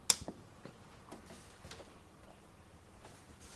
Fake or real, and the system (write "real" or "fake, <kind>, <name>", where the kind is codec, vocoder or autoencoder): real